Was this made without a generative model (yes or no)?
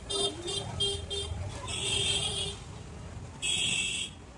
yes